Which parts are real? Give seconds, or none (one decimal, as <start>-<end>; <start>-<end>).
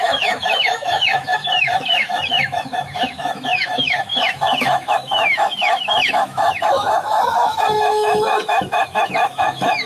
none